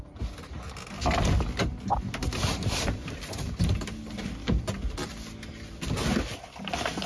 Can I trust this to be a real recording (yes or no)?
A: yes